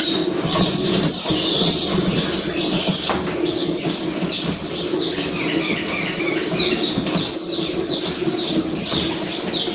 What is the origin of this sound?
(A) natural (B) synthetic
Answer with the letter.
A